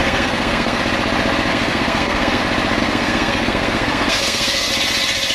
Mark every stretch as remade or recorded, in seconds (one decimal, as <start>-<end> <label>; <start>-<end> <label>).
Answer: 0.0-0.8 remade; 0.8-1.5 recorded; 1.5-2.4 remade; 2.4-2.8 recorded; 2.8-4.7 remade; 4.7-5.3 recorded